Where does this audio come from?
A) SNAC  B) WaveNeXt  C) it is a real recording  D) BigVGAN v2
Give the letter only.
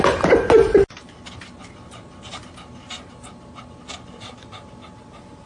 C